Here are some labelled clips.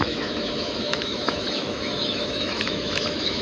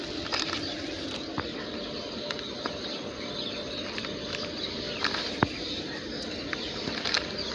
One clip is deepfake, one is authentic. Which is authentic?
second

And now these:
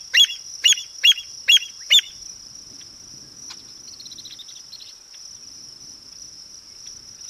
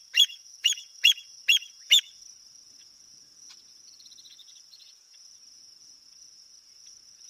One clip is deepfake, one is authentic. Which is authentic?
first